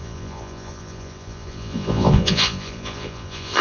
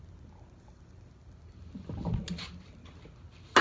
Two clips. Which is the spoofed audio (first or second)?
first